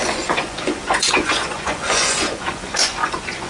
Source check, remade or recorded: remade